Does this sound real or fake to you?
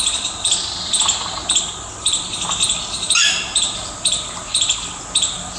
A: real